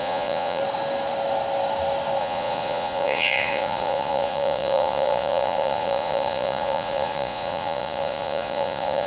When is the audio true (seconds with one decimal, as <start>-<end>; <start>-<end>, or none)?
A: 0.6-2.2